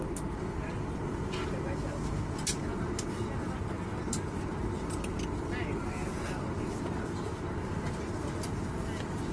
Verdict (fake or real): real